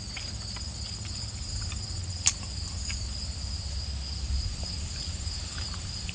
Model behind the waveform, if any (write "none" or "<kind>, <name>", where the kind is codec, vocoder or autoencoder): none